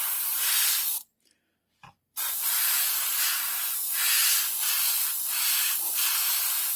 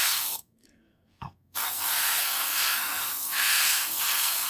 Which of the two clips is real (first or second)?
first